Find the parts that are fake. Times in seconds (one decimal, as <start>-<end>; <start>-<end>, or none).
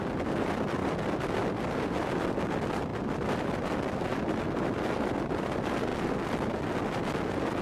2.9-5.4